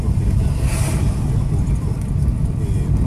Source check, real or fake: real